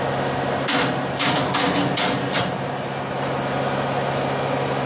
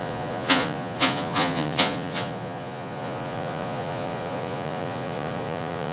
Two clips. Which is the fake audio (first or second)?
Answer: second